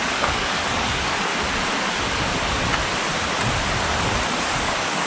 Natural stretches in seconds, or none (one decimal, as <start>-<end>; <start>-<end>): 1.3-4.4